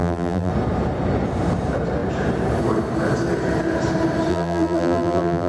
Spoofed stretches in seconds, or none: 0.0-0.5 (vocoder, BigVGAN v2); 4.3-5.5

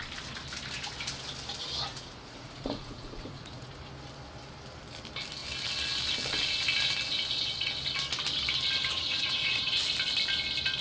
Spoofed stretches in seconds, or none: 1.9-3.8 (vocoder, Vocos); 8.9-9.7